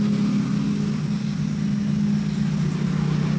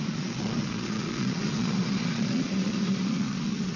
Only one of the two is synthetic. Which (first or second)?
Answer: second